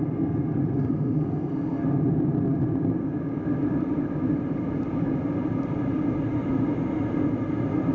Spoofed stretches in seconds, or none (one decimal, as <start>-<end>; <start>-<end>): 0.8-1.8